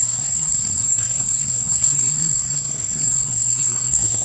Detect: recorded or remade remade